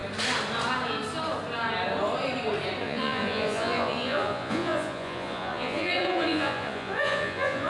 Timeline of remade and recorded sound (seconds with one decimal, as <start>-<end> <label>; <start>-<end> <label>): 0.0-2.8 recorded; 2.8-7.7 remade